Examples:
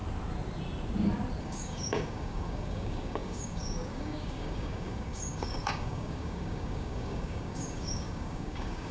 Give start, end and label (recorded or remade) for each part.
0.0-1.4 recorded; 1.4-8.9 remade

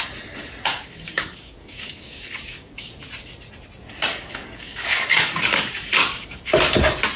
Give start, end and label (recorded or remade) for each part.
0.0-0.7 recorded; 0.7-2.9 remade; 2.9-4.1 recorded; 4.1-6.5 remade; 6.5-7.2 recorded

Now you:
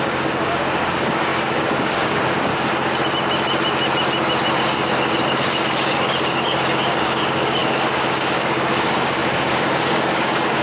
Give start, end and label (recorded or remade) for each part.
0.0-2.5 remade; 2.5-4.5 recorded; 4.5-10.6 remade